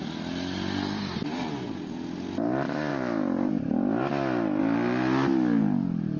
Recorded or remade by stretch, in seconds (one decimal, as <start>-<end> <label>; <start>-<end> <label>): 0.0-6.2 recorded